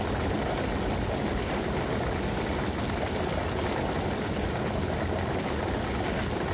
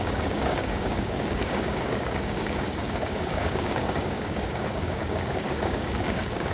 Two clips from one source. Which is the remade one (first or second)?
second